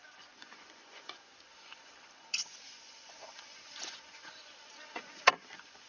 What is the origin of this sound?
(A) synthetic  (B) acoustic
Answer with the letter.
A